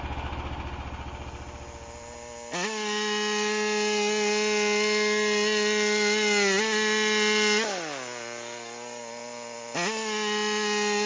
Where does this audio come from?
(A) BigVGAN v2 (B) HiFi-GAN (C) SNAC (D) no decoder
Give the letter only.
D